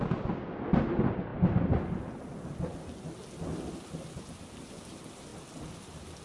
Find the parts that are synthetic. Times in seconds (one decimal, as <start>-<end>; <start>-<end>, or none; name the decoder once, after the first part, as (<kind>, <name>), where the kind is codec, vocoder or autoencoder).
none

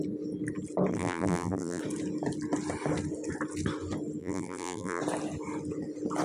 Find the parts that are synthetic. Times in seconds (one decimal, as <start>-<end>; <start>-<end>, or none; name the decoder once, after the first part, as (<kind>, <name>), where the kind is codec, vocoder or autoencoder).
0.9-1.8 (vocoder, BigVGAN v2); 4.2-5.0

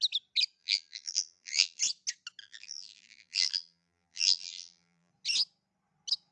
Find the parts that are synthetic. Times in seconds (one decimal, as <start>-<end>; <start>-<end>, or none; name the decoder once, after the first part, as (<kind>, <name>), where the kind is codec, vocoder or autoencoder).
0.6-1.8 (vocoder, BigVGAN v2); 2.4-5.1

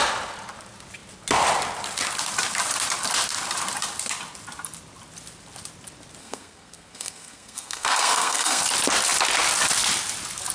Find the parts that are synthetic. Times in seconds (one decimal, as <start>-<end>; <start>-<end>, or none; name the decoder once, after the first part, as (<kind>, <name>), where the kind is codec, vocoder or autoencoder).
6.2-8.6 (codec, SNAC)